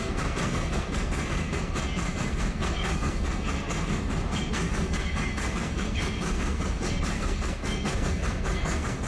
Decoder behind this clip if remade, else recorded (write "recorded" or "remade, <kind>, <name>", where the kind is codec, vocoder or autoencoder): remade, codec, SNAC